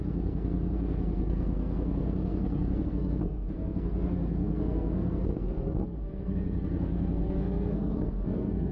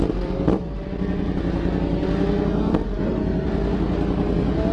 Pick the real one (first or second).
second